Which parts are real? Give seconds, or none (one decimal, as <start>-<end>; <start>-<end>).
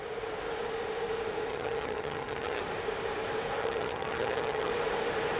0.0-1.5; 2.6-3.6; 4.7-5.4